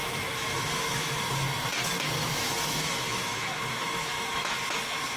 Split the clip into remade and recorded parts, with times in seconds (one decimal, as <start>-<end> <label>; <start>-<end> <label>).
0.0-1.2 remade; 1.2-2.2 recorded; 2.2-4.7 remade; 4.7-5.2 recorded

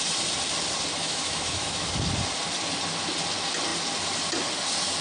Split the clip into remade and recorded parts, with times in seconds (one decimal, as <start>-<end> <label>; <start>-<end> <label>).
0.0-1.0 recorded; 1.0-1.9 remade; 1.9-5.0 recorded

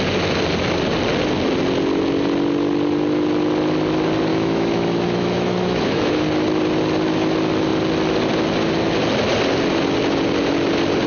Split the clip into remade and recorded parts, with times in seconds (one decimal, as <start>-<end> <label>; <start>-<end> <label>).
0.0-4.3 recorded; 4.3-6.1 remade; 6.1-11.1 recorded

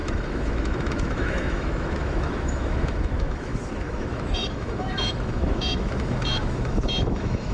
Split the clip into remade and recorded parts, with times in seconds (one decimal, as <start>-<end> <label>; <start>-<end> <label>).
0.0-7.5 remade

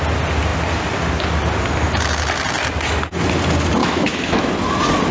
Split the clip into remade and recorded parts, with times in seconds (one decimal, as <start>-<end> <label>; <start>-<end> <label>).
0.0-3.8 recorded; 3.8-4.5 remade; 4.5-5.1 recorded

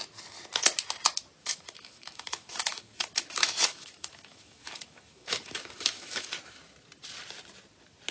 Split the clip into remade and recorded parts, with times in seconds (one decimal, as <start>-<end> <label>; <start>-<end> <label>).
0.0-1.4 recorded; 1.4-6.3 remade; 6.3-8.1 recorded